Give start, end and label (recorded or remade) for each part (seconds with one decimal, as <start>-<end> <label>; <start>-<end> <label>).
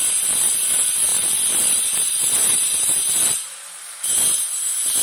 0.0-1.1 recorded; 1.1-4.1 remade; 4.1-5.0 recorded